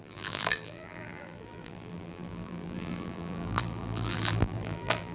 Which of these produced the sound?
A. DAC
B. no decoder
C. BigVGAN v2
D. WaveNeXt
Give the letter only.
C